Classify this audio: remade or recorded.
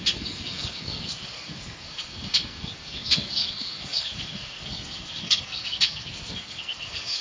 remade